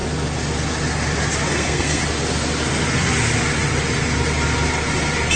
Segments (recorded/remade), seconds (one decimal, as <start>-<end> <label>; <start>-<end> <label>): 0.0-1.5 recorded; 1.5-2.0 remade; 2.0-5.4 recorded